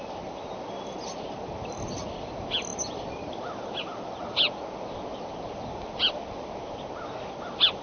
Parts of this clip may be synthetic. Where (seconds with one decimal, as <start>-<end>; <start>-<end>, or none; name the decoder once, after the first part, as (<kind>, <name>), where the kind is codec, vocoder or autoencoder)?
none